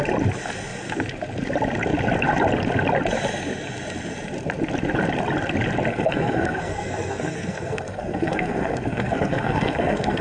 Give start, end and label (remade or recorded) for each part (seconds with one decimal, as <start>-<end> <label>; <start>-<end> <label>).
0.0-5.9 recorded; 5.9-10.2 remade